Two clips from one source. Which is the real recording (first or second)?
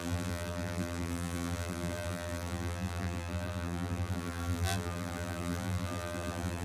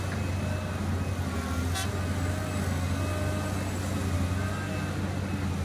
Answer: second